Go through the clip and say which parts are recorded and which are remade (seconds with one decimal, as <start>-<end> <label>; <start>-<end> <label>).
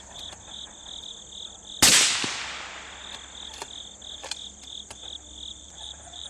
0.0-5.5 recorded; 5.5-6.3 remade